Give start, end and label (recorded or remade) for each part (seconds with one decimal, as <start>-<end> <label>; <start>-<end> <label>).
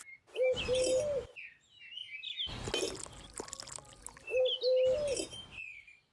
0.0-6.1 recorded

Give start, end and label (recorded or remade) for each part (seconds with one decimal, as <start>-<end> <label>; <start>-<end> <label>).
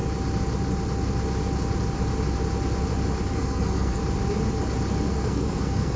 0.0-3.3 recorded; 3.3-4.0 remade; 4.0-5.1 recorded; 5.1-6.0 remade